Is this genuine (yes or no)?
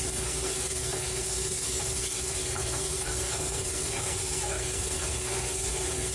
no